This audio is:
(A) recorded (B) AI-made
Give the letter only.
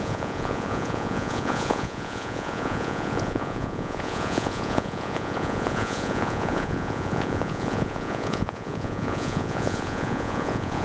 B